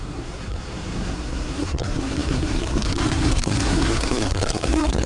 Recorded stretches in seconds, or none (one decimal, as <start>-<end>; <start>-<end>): none